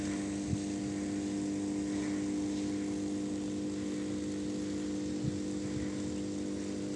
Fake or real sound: real